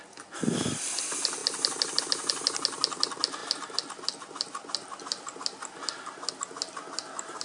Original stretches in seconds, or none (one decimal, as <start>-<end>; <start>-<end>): 0.0-7.4